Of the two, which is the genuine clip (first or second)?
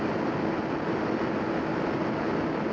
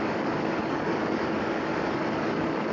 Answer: first